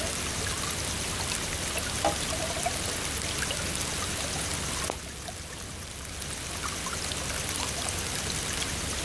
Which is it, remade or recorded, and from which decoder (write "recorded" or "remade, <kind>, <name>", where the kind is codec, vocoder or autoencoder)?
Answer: recorded